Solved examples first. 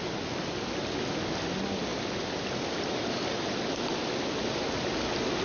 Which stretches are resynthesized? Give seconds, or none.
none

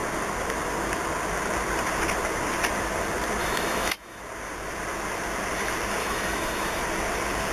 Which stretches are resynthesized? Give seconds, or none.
3.4-4.2 (autoencoder, DAC-VAE); 6.0-6.8